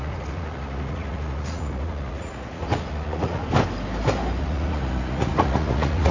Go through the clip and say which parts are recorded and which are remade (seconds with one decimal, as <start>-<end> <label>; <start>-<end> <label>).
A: 0.0-3.4 remade; 3.4-4.4 recorded; 4.4-6.1 remade